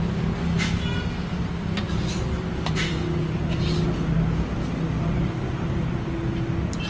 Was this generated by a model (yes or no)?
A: no